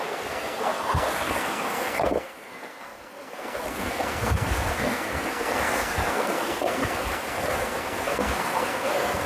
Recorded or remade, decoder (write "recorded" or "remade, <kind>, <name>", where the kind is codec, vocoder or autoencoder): remade, codec, SNAC